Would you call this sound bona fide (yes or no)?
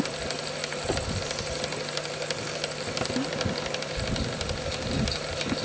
yes